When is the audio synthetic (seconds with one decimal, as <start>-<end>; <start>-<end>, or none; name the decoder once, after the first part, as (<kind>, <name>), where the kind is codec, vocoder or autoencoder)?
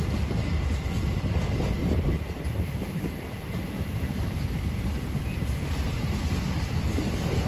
0.0-1.8 (vocoder, BigVGAN v2); 6.3-7.5